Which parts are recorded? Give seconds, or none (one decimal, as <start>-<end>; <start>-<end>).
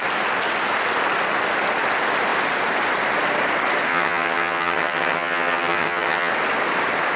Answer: 0.0-3.9; 6.3-7.2